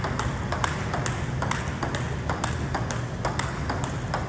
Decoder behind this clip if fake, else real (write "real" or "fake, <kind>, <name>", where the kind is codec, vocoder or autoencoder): real